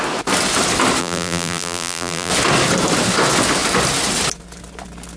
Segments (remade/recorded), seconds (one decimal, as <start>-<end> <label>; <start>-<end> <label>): 0.0-1.0 recorded; 1.0-2.3 remade; 2.3-5.2 recorded